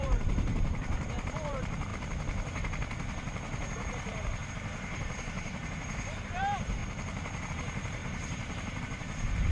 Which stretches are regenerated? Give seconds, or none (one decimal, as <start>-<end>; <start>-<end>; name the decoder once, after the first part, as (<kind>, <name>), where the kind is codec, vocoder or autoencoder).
0.0-1.9 (vocoder, BigVGAN v2); 4.5-6.8; 7.5-9.5

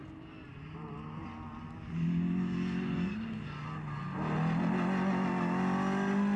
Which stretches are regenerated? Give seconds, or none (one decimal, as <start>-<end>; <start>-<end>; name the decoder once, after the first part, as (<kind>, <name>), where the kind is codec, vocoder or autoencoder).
none

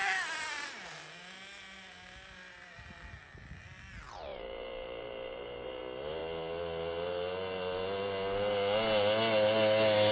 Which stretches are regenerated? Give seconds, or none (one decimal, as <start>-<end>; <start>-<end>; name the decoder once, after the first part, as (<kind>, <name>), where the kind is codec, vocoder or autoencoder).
4.3-5.8 (vocoder, BigVGAN v2)

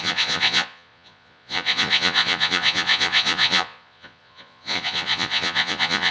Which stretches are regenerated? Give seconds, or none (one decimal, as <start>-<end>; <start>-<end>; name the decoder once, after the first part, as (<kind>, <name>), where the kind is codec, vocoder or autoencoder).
0.0-6.1 (vocoder, Vocos)

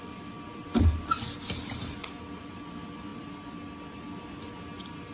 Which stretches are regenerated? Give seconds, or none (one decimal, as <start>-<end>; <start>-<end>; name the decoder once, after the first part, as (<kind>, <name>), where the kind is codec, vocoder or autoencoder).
none

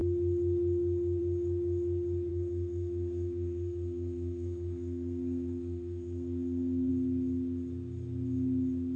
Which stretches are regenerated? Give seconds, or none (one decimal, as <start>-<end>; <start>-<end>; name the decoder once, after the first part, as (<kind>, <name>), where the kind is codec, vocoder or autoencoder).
2.3-6.9 (codec, SNAC)

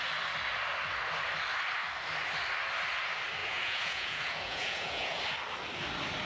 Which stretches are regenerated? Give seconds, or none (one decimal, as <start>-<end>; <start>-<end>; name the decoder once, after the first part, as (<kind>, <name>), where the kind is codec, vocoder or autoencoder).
3.4-5.2 (vocoder, Vocos)